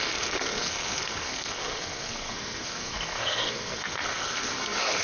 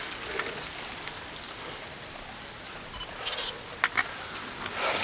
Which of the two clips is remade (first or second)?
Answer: first